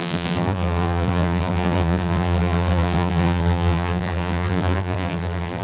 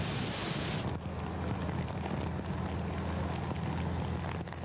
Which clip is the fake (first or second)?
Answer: first